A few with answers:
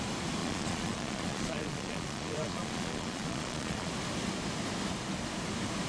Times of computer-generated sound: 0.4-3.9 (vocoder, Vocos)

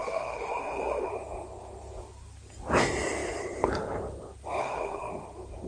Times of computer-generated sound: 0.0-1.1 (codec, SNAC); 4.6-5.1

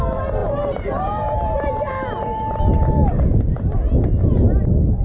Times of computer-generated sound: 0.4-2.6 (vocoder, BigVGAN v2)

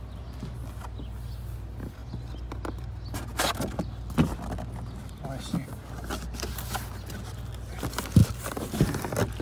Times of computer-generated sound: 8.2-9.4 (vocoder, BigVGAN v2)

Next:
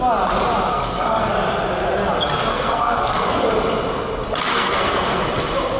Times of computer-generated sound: 0.7-1.3 (codec, SNAC); 2.5-3.5; 4.5-5.2

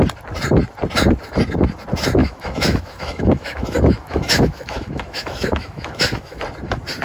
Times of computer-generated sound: 2.2-6.4 (autoencoder, DAC-VAE)

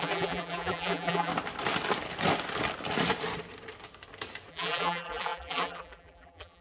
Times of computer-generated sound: 0.0-1.3 (vocoder, BigVGAN v2); 4.5-6.6